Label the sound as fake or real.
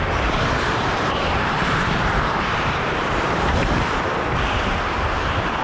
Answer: fake